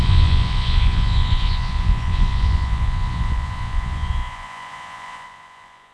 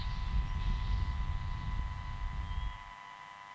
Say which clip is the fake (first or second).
first